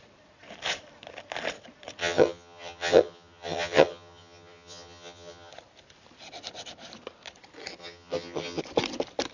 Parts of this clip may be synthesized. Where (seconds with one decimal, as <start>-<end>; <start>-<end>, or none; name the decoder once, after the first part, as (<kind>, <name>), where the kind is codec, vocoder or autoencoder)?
2.0-5.5 (vocoder, HiFi-GAN); 7.8-8.6